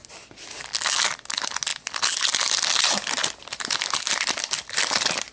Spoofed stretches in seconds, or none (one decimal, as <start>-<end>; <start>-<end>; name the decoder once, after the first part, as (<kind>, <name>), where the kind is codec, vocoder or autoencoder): none